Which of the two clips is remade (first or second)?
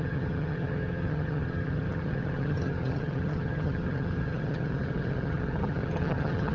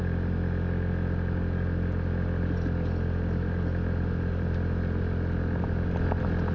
first